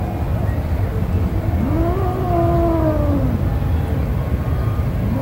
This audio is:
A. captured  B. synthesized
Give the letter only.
A